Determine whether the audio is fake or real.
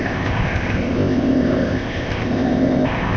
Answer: fake